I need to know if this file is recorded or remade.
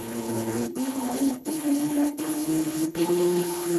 remade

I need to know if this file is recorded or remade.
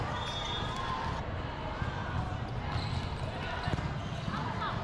recorded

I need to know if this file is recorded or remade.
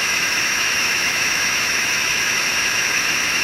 remade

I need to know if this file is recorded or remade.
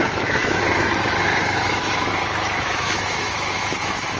remade